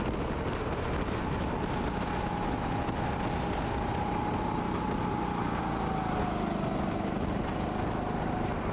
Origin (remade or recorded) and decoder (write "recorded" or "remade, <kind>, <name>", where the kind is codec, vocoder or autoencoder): recorded